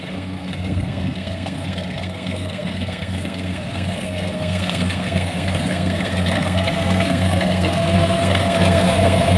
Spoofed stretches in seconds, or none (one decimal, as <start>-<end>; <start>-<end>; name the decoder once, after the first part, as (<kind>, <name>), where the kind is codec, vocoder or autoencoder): 0.0-9.4 (codec, SNAC)